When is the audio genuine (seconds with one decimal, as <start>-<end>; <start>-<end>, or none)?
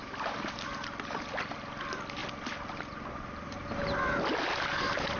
0.0-5.2